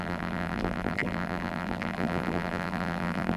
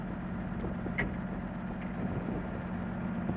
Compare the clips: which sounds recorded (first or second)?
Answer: second